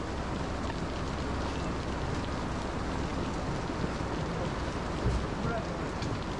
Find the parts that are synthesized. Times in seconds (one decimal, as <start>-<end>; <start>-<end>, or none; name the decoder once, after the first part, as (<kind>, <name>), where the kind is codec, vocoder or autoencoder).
none